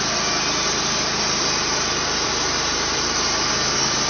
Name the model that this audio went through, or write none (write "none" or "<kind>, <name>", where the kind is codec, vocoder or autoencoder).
vocoder, BigVGAN v2